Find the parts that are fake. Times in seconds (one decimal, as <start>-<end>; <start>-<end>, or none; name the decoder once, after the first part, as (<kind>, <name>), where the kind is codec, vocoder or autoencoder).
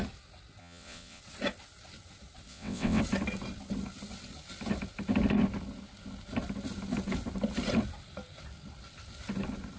0.6-1.2 (vocoder, WaveNeXt); 2.5-3.0